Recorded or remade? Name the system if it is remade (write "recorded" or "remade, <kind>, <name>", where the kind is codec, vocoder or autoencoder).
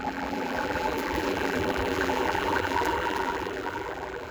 remade, vocoder, BigVGAN v2